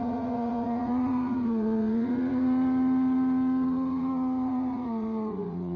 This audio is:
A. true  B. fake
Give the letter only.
B